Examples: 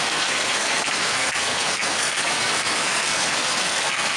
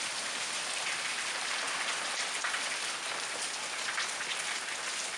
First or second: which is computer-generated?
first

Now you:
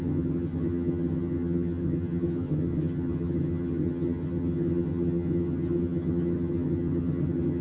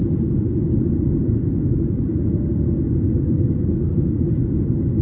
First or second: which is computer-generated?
first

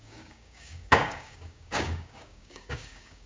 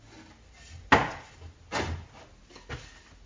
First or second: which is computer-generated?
first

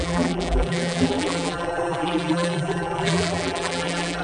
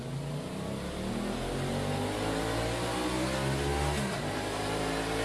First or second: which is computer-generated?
first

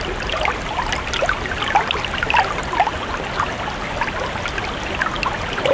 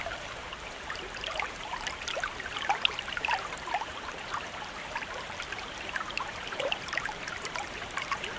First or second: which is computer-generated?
second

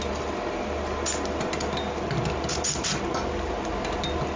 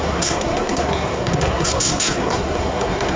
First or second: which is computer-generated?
second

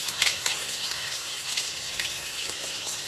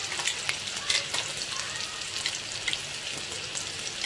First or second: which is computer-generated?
first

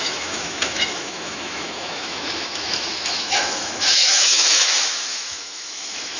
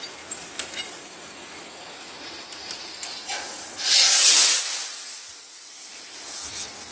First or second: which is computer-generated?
first